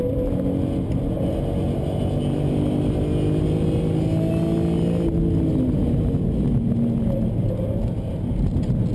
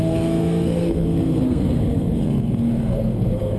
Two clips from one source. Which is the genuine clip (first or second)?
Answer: first